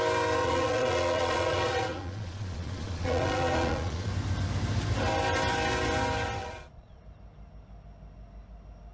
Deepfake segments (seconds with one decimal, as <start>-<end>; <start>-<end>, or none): 0.4-4.1; 6.4-7.0